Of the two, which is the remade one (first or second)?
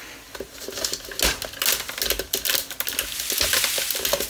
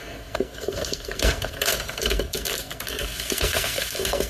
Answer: second